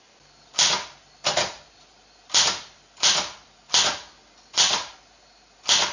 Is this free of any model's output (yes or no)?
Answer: yes